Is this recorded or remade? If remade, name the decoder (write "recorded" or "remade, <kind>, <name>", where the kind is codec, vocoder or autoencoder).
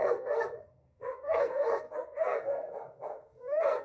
remade, codec, SNAC